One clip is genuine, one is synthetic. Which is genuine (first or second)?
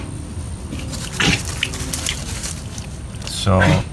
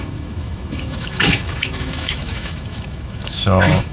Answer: first